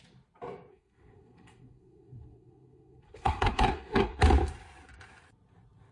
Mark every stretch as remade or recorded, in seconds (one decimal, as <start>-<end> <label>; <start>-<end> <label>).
0.0-0.7 recorded; 0.7-4.2 remade; 4.2-5.9 recorded